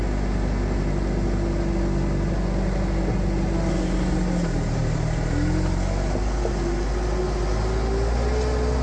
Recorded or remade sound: recorded